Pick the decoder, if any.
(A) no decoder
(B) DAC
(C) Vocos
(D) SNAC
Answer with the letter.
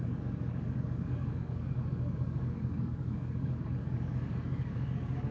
B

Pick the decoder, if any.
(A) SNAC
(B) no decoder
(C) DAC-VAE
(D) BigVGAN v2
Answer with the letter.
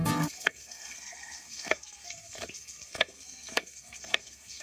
A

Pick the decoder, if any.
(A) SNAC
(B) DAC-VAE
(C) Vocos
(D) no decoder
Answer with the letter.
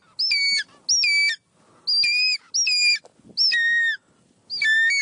D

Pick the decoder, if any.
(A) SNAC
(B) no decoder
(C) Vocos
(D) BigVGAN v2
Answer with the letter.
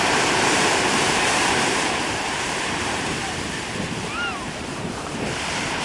D